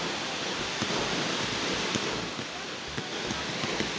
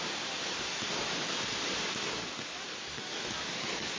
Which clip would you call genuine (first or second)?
first